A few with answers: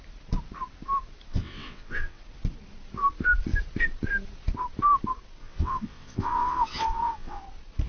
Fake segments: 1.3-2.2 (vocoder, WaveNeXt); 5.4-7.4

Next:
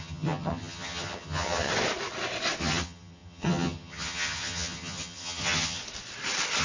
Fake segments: 0.0-1.7 (vocoder, HiFi-GAN); 2.6-5.8

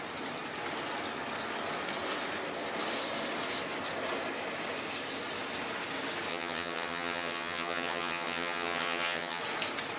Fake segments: 6.3-9.4 (vocoder, HiFi-GAN)

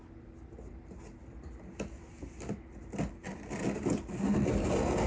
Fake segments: 1.2-4.3 (vocoder, BigVGAN v2)

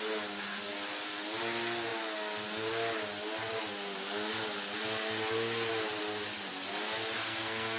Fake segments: 7.2-7.8 (codec, SNAC)

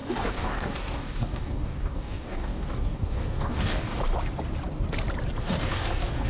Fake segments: 0.0-4.1 (codec, DAC); 5.4-6.3